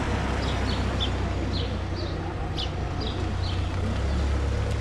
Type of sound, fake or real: real